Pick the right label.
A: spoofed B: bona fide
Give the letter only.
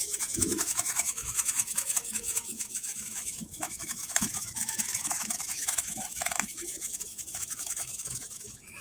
A